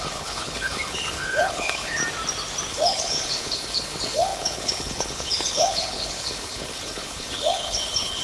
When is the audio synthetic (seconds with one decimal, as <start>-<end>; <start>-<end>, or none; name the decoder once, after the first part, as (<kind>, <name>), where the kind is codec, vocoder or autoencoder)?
0.0-2.0 (codec, HILCodec); 2.7-8.2